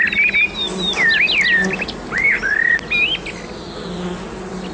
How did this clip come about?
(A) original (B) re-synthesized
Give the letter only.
A